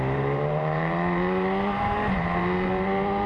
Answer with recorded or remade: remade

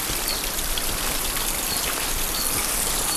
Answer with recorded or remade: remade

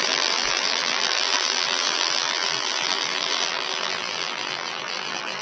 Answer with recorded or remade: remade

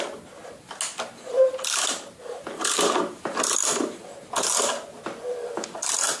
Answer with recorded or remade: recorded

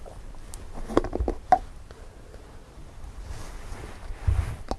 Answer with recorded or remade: recorded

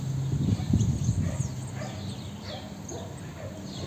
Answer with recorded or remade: recorded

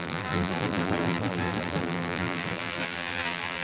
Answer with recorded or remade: remade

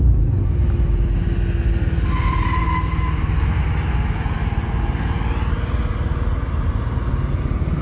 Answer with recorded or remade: recorded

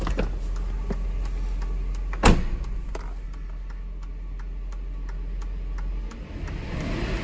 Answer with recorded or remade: recorded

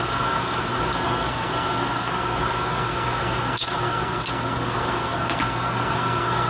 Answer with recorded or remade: remade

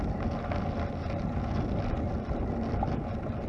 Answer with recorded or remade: recorded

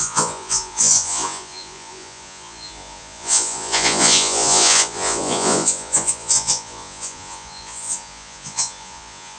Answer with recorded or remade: remade